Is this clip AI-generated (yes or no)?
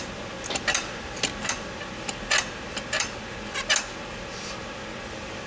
no